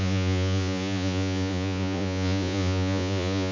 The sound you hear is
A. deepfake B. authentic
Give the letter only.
A